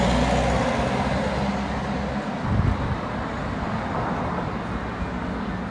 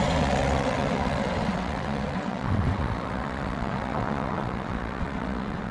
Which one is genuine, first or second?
first